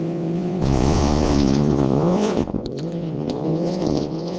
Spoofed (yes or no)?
yes